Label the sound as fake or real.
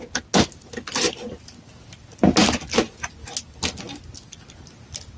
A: real